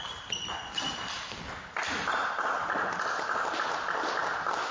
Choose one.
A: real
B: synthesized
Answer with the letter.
A